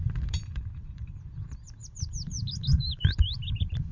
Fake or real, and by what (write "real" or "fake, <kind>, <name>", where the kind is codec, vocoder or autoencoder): fake, vocoder, BigVGAN v2